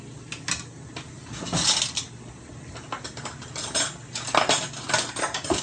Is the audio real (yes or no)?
yes